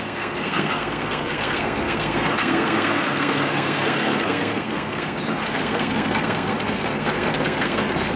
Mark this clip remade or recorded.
remade